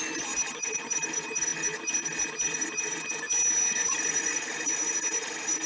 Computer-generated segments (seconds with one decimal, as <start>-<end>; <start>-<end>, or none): 3.8-4.4